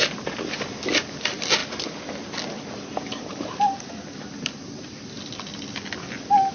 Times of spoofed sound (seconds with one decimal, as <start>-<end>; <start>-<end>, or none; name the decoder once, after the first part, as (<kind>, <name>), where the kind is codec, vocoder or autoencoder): none